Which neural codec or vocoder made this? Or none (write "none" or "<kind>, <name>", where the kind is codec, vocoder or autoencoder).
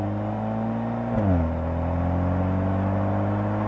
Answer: none